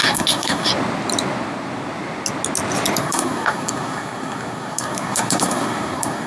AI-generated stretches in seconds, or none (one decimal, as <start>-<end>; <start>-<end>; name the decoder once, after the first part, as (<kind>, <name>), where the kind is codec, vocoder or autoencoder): 0.0-0.7 (codec, SNAC); 3.0-6.3